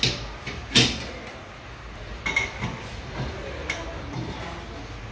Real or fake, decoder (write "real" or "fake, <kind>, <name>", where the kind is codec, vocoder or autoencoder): real